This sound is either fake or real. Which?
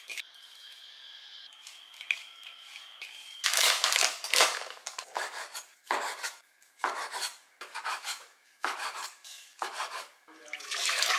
fake